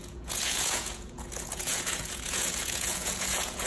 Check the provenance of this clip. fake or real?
fake